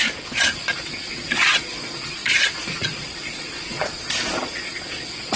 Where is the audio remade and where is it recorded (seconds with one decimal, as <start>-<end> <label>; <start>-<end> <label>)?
0.0-5.4 remade